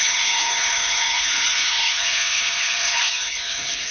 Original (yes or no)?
no